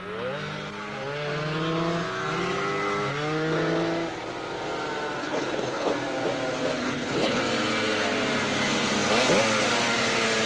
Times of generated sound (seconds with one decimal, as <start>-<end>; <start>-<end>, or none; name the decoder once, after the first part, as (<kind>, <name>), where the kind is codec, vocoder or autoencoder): 5.2-5.9 (codec, HILCodec); 6.8-7.4